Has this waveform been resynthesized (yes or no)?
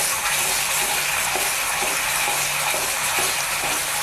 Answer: no